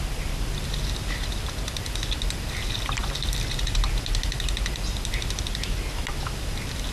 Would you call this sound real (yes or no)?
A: yes